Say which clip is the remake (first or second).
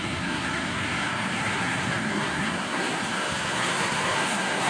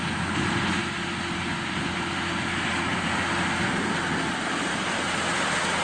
first